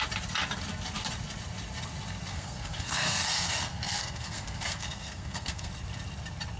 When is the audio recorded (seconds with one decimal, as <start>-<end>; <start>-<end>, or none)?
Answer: 0.0-2.3; 5.7-6.6